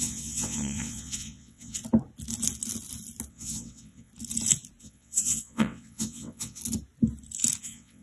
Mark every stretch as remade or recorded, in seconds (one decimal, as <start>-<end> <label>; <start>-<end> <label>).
0.0-1.8 remade; 1.8-3.3 recorded; 3.3-4.1 remade; 4.1-4.8 recorded; 4.8-6.6 remade; 6.6-7.6 recorded; 7.6-8.0 remade